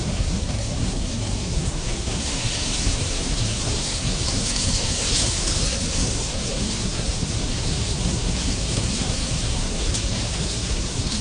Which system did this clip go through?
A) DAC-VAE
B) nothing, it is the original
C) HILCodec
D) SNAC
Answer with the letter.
D